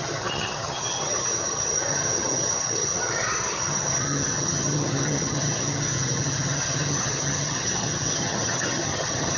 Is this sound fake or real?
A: fake